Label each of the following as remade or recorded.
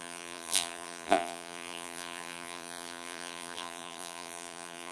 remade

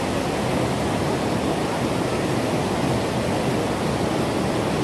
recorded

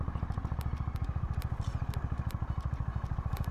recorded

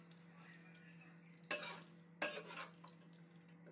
recorded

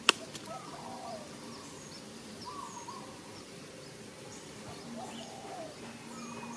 recorded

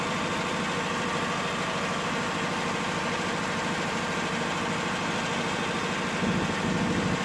recorded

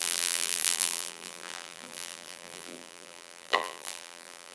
remade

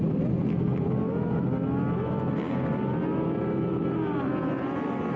recorded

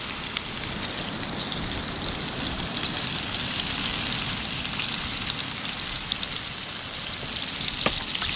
remade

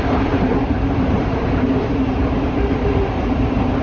remade